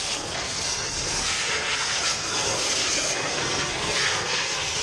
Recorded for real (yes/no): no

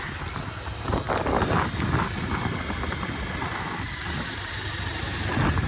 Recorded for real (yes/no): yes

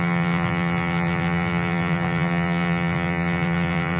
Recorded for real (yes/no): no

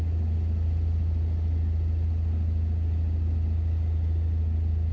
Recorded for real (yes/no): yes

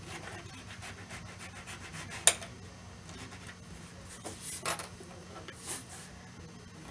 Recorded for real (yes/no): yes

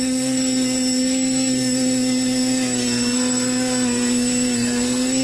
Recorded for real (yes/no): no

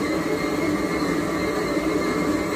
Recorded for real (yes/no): yes